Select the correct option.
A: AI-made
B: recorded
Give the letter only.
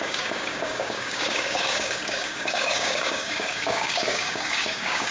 A